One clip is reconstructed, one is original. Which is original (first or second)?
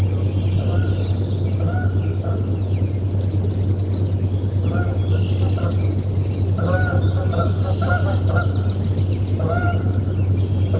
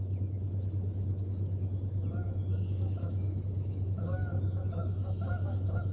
first